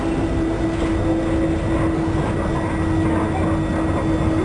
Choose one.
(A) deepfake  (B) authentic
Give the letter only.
B